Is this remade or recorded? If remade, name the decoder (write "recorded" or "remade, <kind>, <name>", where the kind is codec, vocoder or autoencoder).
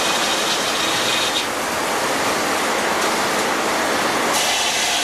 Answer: recorded